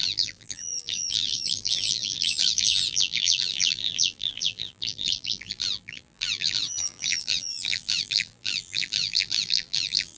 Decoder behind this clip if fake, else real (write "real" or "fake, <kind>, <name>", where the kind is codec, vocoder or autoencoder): fake, vocoder, BigVGAN v2